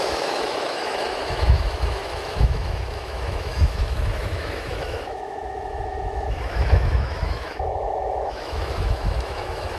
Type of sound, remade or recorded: remade